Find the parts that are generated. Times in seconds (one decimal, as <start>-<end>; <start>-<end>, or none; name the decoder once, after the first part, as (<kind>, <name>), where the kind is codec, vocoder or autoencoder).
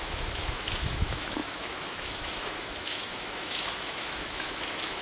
0.0-5.0 (autoencoder, DAC-VAE)